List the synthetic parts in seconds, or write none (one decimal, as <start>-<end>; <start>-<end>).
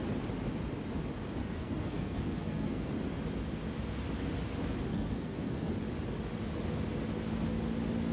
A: 1.4-2.9; 4.9-5.7